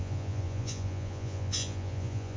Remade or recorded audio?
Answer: remade